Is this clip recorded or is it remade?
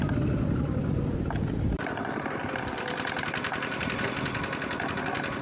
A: recorded